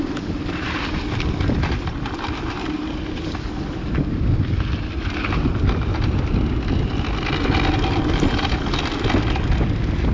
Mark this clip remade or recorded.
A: recorded